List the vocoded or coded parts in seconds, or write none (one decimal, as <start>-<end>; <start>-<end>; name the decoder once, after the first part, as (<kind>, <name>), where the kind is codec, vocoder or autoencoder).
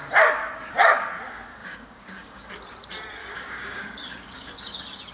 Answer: 0.4-1.1 (codec, DAC); 1.6-2.5; 3.2-4.5